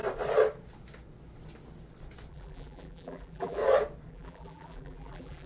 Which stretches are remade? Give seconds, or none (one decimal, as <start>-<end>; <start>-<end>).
2.3-3.6; 4.1-5.5